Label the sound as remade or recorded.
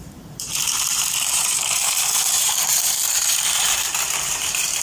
remade